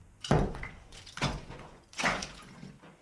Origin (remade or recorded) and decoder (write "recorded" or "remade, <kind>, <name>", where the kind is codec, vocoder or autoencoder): remade, vocoder, Vocos